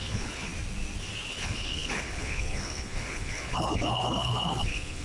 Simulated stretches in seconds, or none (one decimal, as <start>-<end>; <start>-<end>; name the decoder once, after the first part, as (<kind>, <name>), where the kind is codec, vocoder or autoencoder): 0.0-0.5 (codec, HILCodec); 1.3-5.0